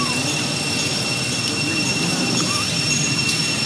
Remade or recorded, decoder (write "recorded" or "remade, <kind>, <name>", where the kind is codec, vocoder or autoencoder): recorded